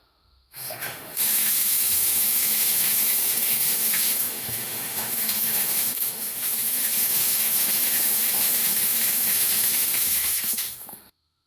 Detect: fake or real fake